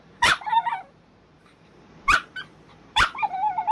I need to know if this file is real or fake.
fake